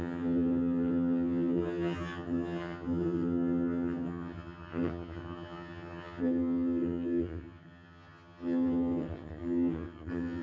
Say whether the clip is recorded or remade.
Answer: remade